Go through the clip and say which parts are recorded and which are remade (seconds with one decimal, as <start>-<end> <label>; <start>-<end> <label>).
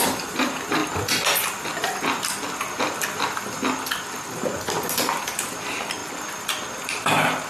0.0-0.8 remade; 0.8-4.2 recorded; 4.2-6.0 remade; 6.0-6.7 recorded; 6.7-7.5 remade